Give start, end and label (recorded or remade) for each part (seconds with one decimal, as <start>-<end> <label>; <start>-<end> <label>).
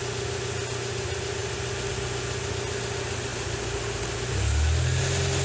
0.0-5.4 recorded